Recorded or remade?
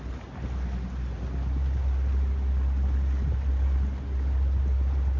recorded